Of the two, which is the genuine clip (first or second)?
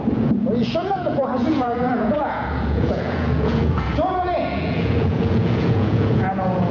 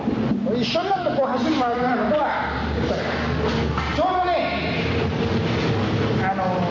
second